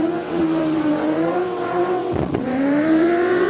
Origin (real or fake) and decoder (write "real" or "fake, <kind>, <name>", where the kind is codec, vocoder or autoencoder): fake, vocoder, WaveNeXt